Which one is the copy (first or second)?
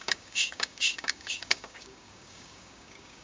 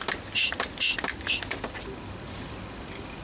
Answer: first